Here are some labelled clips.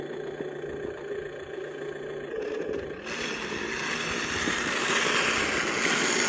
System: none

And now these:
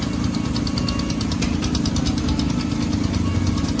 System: none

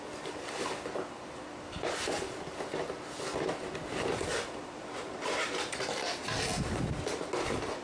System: none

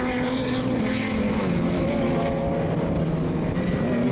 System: none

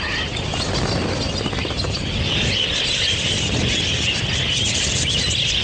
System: none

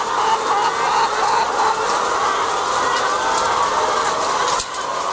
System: none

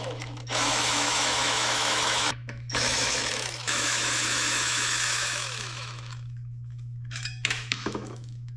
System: autoencoder, DAC-VAE